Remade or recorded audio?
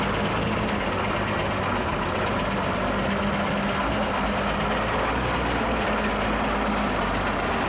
recorded